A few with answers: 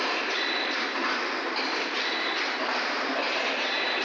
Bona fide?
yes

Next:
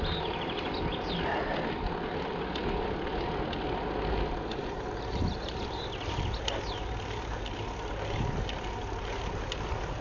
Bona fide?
yes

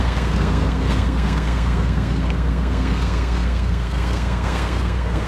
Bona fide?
no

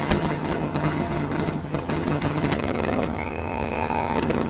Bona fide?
no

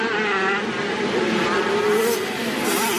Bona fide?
yes